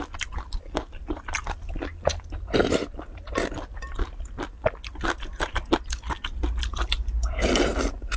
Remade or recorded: recorded